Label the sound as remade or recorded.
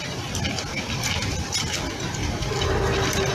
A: recorded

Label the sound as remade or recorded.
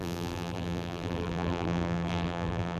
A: remade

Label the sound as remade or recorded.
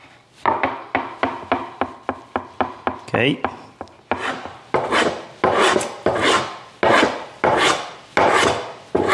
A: recorded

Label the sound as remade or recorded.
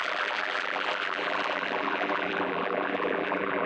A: remade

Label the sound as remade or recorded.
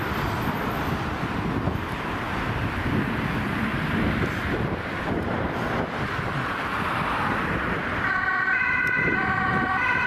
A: remade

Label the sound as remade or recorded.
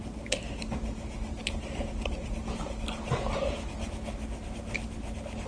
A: recorded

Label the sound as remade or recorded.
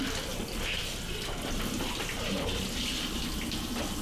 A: recorded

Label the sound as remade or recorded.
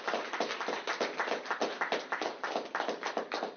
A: recorded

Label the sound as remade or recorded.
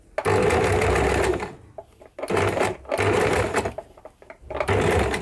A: recorded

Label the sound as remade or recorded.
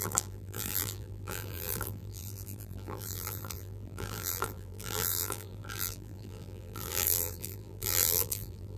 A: remade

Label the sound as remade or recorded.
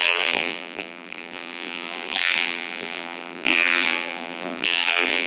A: remade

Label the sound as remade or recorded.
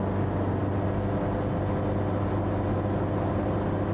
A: recorded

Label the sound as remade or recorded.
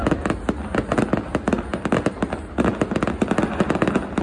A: recorded